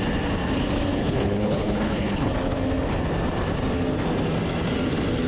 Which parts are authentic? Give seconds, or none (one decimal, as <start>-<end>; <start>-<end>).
0.0-1.0; 2.3-5.3